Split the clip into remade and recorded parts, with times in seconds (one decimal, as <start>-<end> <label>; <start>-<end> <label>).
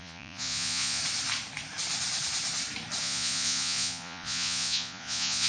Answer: 0.0-1.0 remade; 1.0-3.0 recorded; 3.0-5.5 remade